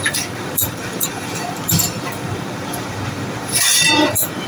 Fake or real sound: fake